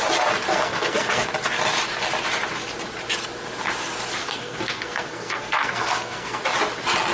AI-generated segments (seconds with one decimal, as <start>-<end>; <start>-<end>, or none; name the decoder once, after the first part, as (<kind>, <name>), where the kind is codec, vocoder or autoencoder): 0.5-1.3 (codec, SNAC); 4.2-6.4